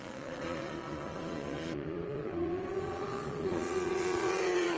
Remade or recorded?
remade